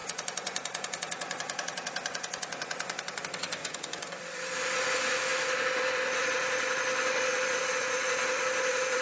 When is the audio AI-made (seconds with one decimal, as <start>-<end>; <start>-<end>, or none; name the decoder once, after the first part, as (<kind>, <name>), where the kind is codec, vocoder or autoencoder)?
0.0-3.2 (vocoder, Vocos); 3.6-4.2